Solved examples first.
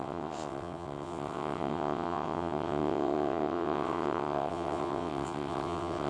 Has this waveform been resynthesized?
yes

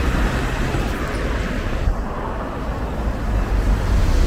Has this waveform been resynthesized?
no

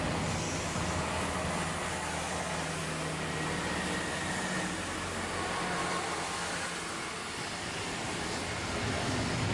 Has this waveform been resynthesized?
no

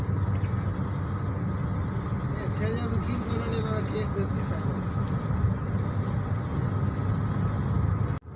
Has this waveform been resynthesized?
no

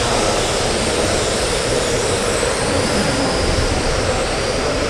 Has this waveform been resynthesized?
yes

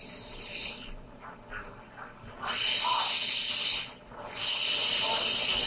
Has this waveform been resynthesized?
no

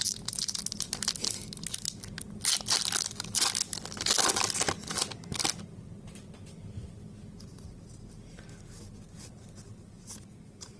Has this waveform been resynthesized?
no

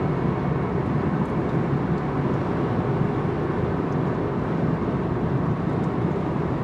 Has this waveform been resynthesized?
no